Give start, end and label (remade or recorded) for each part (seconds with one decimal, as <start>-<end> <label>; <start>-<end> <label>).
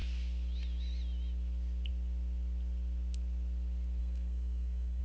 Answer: 0.0-4.0 recorded; 4.0-5.0 remade